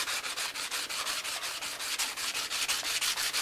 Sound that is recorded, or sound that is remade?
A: recorded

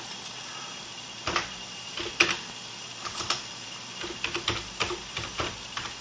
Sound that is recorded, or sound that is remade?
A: remade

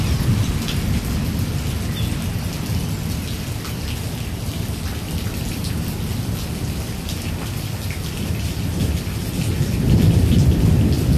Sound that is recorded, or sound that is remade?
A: recorded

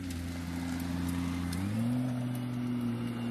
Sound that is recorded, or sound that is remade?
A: recorded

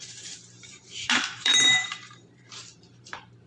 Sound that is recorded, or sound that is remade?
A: remade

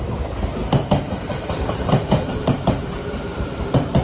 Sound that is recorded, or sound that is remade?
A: remade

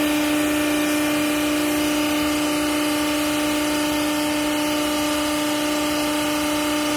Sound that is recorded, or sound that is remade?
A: recorded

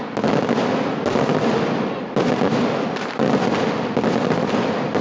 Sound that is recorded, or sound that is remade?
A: recorded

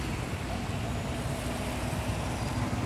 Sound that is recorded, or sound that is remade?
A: recorded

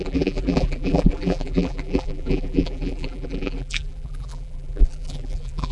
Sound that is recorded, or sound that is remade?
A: remade